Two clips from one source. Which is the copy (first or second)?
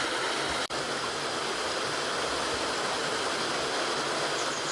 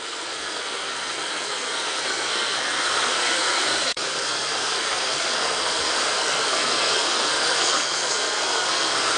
second